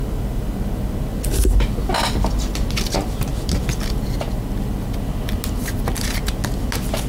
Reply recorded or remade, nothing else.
recorded